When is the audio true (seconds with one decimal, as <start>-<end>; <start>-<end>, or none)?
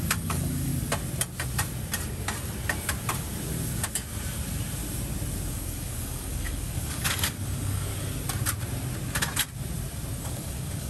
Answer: 0.7-5.5; 7.9-10.2